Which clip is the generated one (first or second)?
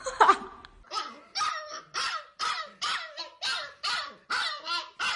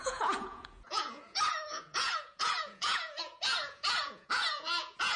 second